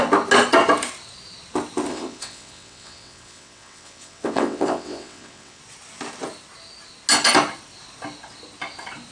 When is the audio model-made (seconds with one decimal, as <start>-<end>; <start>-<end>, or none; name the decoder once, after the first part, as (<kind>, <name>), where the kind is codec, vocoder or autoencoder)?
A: 1.9-5.6 (vocoder, WaveNeXt)